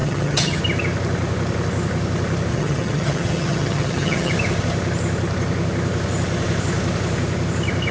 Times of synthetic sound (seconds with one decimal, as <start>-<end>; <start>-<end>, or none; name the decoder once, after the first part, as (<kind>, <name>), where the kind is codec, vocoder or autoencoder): 0.0-0.6 (vocoder, HiFi-GAN); 2.5-4.3